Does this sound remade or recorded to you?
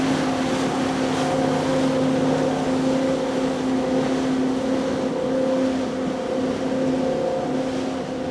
recorded